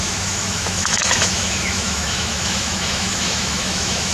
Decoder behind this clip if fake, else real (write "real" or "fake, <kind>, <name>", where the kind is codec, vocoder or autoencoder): fake, autoencoder, DAC-VAE